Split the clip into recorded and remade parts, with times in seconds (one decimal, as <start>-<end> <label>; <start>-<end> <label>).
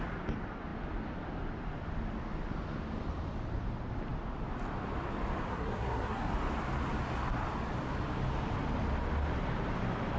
0.0-5.5 recorded; 5.5-6.3 remade; 6.3-10.2 recorded